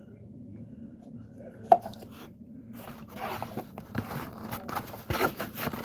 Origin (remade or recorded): remade